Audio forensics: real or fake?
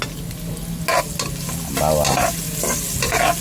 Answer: real